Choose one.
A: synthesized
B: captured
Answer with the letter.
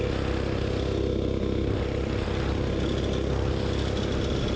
B